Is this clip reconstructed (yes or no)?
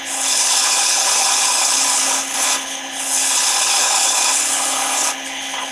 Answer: yes